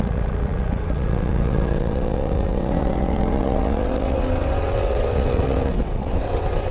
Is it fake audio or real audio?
fake